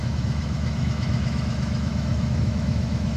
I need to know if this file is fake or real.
fake